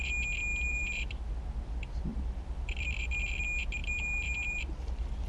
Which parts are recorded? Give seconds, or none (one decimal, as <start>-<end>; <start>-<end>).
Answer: 0.0-0.5; 1.2-2.1; 3.4-3.8; 4.6-5.3